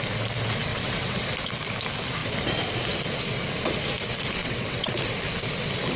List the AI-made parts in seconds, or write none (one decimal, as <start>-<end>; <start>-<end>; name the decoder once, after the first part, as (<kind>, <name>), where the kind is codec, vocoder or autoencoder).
0.7-1.3 (vocoder, WaveNeXt); 4.4-4.9